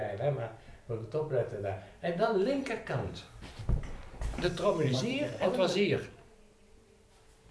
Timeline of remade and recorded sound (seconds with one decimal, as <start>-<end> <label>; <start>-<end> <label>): 0.0-1.4 recorded; 1.4-5.5 remade; 5.5-7.5 recorded